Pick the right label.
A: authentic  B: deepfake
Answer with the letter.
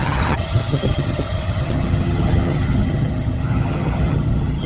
B